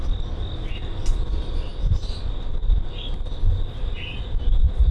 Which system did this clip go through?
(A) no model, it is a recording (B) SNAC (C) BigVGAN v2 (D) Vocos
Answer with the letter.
A